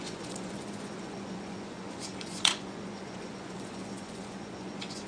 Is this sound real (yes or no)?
no